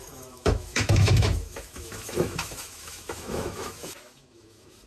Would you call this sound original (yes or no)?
no